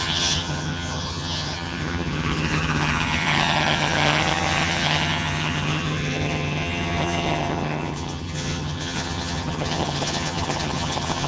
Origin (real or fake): fake